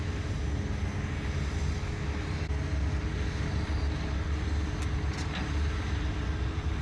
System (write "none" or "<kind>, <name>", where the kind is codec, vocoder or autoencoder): none